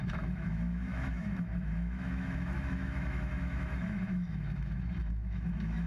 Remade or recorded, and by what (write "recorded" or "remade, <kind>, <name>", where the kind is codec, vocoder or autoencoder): remade, autoencoder, DAC-VAE